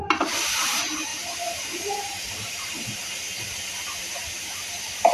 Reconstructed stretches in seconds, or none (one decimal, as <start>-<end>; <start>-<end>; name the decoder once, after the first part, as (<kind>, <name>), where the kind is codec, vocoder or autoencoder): 0.0-3.0 (vocoder, BigVGAN v2); 4.1-5.1